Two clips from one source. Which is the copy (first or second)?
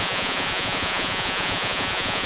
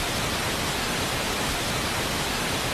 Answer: first